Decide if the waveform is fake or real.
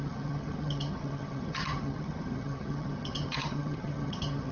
fake